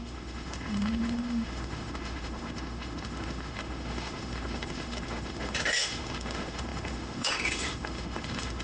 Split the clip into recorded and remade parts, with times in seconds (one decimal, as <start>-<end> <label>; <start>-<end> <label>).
0.0-8.6 remade